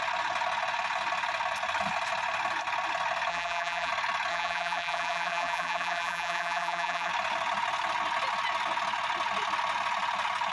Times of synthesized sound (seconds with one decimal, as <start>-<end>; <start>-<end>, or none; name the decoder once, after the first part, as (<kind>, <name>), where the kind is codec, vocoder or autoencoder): 3.3-3.9 (vocoder, BigVGAN v2); 4.3-7.1